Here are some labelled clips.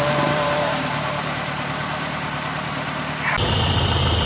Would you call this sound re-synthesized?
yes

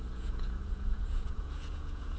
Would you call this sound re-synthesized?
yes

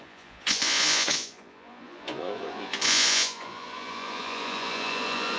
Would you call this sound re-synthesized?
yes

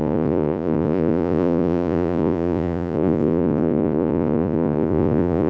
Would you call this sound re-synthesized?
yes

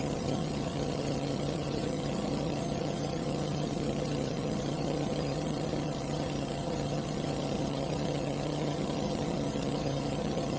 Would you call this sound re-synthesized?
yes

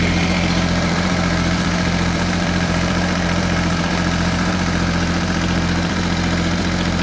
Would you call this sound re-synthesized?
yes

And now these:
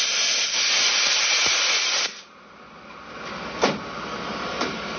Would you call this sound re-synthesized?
no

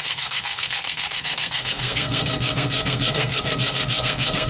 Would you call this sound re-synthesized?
yes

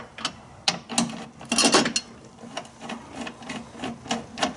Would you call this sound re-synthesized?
no